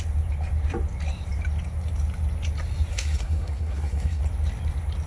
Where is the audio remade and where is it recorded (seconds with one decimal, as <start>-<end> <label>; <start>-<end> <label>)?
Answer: 0.0-2.9 recorded; 2.9-4.2 remade; 4.2-5.1 recorded